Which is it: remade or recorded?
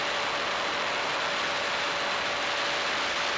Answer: recorded